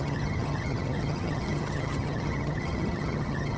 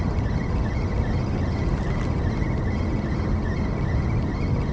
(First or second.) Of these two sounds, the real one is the second